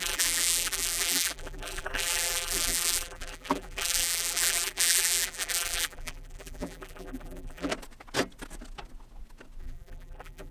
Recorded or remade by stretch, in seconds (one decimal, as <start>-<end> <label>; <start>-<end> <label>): 0.0-7.7 remade; 7.7-9.6 recorded; 9.6-10.5 remade